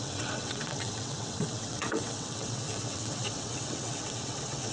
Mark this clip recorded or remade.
remade